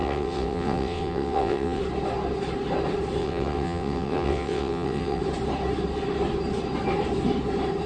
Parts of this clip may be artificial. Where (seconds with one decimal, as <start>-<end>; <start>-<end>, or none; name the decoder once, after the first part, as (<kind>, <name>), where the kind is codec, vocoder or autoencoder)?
0.0-1.8 (vocoder, WaveNeXt); 3.2-5.2